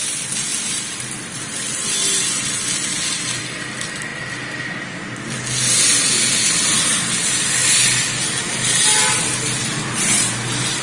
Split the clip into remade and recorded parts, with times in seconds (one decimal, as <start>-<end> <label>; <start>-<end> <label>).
0.0-10.8 recorded